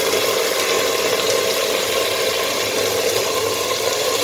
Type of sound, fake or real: real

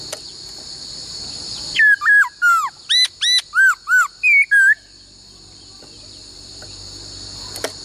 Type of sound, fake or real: real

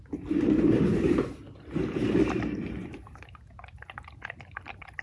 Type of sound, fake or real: real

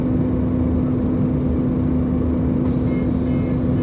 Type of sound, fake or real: real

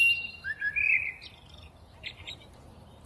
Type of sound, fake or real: fake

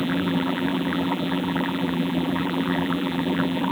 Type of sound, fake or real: fake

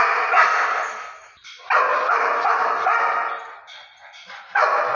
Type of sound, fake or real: real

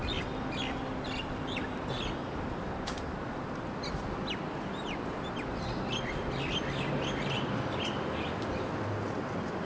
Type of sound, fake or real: real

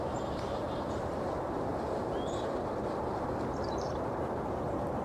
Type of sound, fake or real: fake